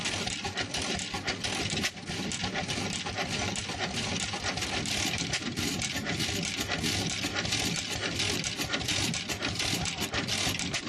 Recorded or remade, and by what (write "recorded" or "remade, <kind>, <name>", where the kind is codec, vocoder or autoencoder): recorded